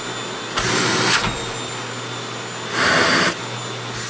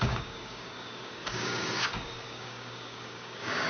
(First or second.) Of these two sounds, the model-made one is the second